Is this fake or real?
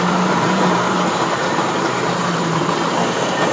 fake